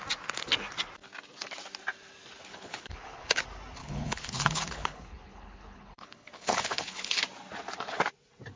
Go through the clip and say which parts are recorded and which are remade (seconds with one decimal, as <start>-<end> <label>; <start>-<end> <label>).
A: 0.0-2.5 recorded; 2.5-3.4 remade; 3.4-3.8 recorded; 3.8-7.2 remade; 7.2-8.6 recorded